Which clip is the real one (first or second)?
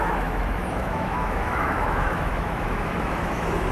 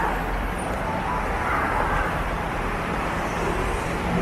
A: second